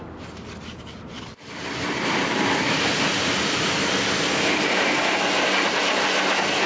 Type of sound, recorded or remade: recorded